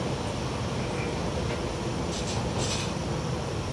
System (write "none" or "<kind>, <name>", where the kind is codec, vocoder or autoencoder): none